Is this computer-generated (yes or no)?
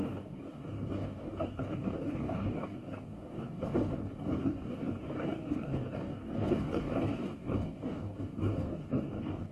yes